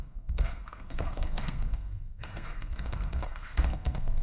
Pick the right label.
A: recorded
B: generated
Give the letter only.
B